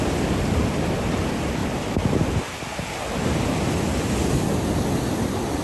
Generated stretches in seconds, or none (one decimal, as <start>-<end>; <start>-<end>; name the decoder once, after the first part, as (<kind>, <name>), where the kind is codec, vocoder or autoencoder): 0.0-1.6 (vocoder, BigVGAN v2); 5.0-5.6